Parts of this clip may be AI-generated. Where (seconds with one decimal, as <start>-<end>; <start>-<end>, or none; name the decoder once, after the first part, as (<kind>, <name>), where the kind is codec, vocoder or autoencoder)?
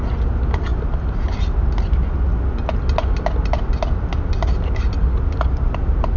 none